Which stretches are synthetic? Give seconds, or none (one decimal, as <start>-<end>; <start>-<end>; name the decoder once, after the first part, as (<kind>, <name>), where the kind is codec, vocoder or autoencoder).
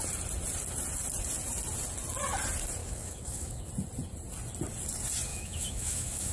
2.8-3.7 (autoencoder, DAC-VAE); 5.3-6.3